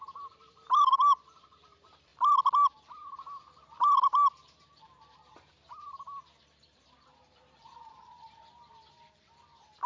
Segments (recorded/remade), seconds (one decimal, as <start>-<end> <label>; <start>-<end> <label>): 0.0-9.9 remade